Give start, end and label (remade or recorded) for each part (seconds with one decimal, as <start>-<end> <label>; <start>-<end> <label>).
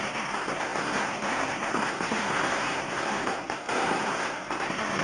0.0-5.0 remade